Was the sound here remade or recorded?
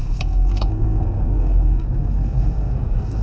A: remade